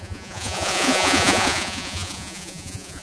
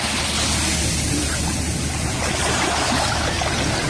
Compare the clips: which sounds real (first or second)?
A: second